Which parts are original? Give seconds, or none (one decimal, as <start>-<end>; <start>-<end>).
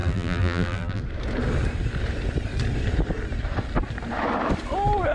1.0-5.1